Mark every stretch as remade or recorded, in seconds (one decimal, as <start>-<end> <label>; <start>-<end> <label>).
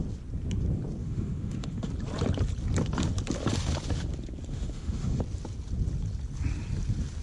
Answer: 0.0-1.0 recorded; 1.0-1.9 remade; 1.9-4.5 recorded; 4.5-5.2 remade; 5.2-7.2 recorded